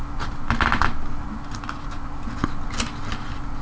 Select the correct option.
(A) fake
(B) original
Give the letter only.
B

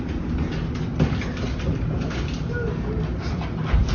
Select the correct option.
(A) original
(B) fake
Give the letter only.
A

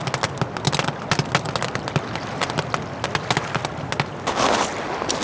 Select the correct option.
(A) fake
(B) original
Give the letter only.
B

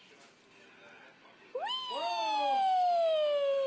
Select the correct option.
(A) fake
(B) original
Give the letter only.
B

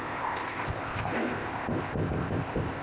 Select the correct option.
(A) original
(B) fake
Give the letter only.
B